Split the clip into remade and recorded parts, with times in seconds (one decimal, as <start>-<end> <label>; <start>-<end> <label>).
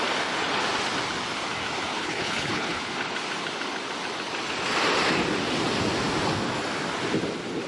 0.0-2.0 recorded; 2.0-2.8 remade; 2.8-7.7 recorded